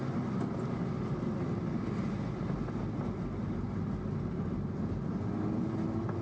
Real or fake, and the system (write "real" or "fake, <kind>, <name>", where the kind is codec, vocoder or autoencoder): real